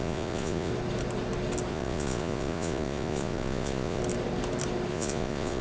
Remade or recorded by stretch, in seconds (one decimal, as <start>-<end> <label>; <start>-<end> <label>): 0.0-0.7 remade; 0.7-1.7 recorded; 1.7-4.0 remade; 4.0-4.9 recorded; 4.9-5.6 remade